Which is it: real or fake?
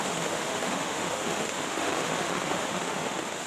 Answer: fake